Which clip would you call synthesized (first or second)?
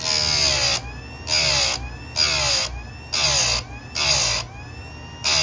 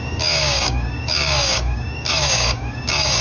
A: second